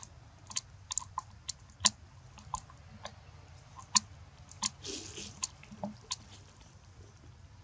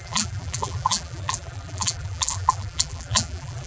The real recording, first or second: first